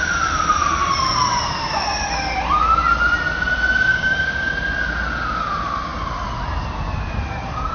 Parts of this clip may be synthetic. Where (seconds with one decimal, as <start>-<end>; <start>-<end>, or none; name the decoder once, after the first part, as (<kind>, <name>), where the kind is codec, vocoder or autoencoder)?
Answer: 3.9-4.5 (codec, DAC)